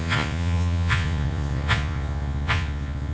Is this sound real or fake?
fake